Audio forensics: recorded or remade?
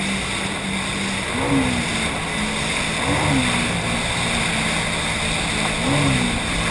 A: recorded